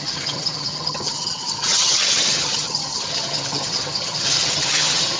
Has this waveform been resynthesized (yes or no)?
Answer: yes